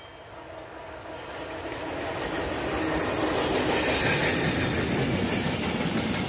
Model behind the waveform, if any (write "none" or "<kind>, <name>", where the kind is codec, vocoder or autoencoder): none